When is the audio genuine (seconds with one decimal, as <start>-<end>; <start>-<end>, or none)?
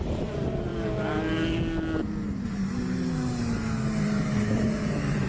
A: 0.7-3.9